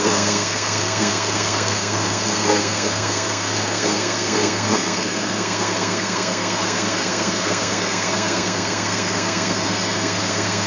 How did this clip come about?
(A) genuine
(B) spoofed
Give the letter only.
B